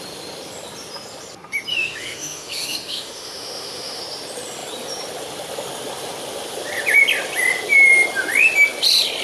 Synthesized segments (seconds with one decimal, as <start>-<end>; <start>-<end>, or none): 1.7-4.0